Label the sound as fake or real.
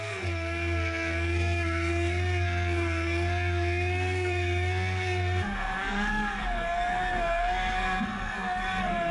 fake